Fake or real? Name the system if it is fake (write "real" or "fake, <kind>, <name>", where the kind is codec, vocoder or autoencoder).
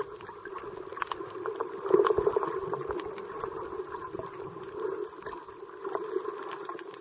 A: real